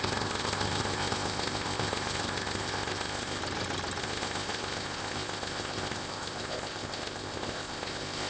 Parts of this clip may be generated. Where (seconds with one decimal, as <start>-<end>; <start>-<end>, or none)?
0.0-3.4; 4.0-8.3